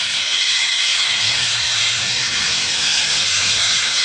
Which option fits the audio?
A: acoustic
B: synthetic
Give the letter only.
B